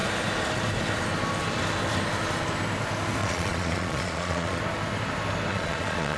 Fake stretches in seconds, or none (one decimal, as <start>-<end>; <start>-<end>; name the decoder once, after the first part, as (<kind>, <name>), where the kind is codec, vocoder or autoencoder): 3.2-4.6 (vocoder, Vocos); 5.5-6.2